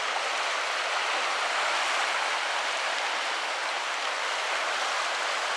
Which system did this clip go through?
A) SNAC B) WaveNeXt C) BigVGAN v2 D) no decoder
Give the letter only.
D